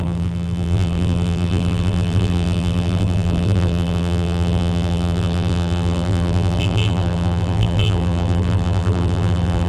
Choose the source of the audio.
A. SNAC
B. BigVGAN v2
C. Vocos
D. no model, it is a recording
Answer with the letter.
B